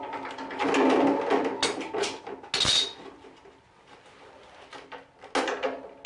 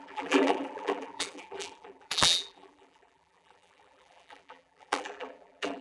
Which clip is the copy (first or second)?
second